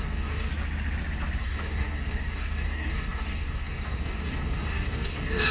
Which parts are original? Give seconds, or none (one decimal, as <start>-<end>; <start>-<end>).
0.5-1.4